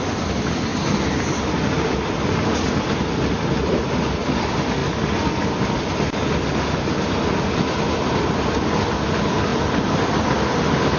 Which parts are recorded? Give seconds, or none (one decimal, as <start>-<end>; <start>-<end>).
0.0-11.0